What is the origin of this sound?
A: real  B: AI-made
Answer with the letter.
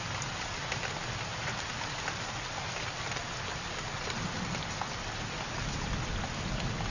A